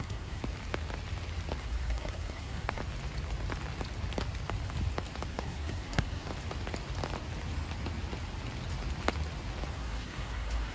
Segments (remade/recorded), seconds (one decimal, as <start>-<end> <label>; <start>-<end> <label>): 0.0-0.4 remade; 0.4-1.6 recorded; 1.6-2.8 remade; 2.8-5.3 recorded; 5.3-6.3 remade; 6.3-9.7 recorded; 9.7-10.7 remade